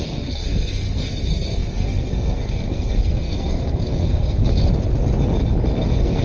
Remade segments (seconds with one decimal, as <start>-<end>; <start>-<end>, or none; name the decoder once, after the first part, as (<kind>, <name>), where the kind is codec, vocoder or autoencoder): 0.0-4.4 (codec, SNAC); 5.8-6.2